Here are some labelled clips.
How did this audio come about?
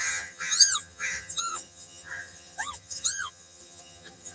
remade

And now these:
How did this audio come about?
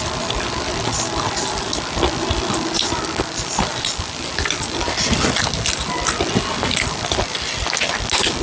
recorded